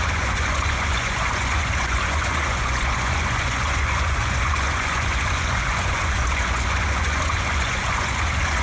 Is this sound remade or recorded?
remade